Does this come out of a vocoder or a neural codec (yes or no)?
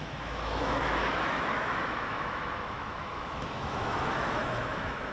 yes